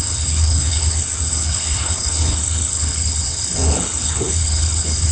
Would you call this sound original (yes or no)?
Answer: no